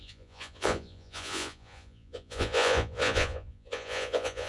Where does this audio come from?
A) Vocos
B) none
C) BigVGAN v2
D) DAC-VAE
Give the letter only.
A